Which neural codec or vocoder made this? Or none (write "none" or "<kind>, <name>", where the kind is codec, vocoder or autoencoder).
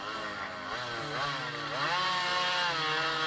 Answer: none